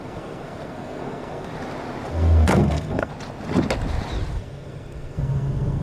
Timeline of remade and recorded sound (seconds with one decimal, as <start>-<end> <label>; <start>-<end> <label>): 0.0-1.5 remade; 1.5-2.1 recorded; 2.1-3.1 remade; 3.1-4.3 recorded; 4.3-5.8 remade